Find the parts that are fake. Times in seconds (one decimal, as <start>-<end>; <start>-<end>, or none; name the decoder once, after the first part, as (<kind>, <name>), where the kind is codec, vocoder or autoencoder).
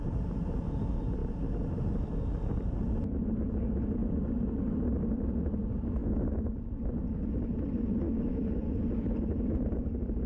none